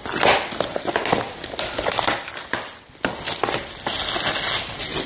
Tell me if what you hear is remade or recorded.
recorded